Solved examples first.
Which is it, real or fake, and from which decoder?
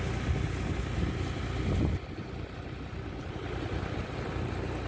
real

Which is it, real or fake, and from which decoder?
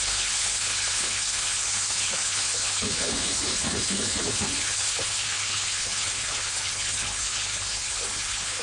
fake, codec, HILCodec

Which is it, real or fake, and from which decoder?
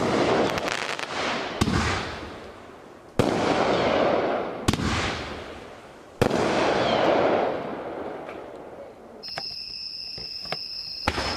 real